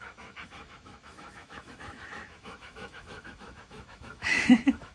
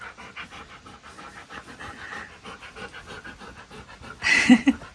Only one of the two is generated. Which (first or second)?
first